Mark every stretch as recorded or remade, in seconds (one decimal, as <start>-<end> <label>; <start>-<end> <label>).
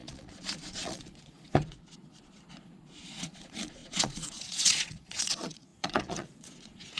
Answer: 0.0-7.0 remade